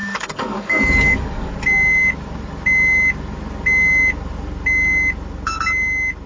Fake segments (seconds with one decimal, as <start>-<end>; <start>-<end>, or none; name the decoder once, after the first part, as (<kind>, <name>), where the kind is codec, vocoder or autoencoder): 0.0-1.5 (codec, DAC)